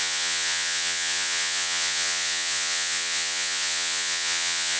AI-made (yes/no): yes